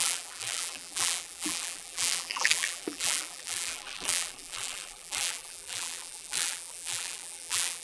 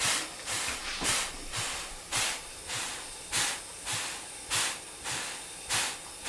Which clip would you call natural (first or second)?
second